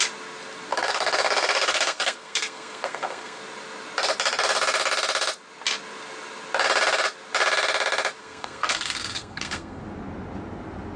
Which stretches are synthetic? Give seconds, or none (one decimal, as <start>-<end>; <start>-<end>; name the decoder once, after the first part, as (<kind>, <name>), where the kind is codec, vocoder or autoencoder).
0.7-3.4 (codec, SNAC); 8.2-9.8